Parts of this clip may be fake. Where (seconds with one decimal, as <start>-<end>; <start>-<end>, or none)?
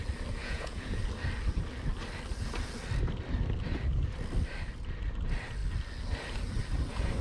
0.4-1.0